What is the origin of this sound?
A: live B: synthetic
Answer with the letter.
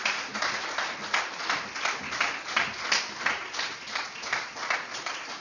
A